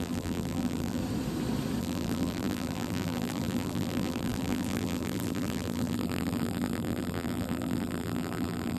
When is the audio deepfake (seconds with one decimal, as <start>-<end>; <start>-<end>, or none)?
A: 0.0-1.0; 1.8-8.8

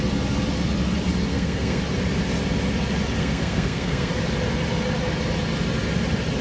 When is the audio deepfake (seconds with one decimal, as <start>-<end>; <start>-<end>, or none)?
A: 1.3-1.8; 3.2-4.1

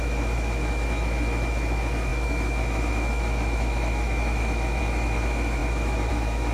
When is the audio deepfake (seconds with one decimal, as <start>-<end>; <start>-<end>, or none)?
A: 0.0-6.5